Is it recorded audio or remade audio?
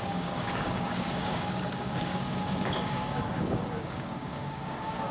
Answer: remade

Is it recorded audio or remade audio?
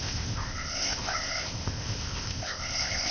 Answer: remade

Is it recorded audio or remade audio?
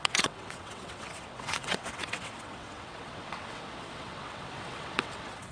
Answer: remade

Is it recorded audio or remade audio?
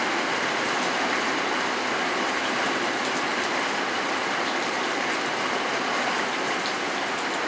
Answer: recorded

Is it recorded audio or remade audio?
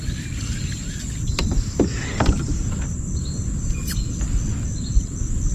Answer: recorded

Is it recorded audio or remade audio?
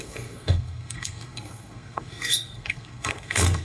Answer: remade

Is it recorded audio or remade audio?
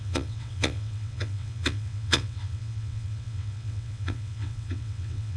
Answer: remade